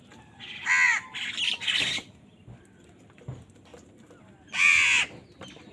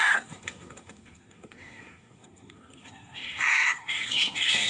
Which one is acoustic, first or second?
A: first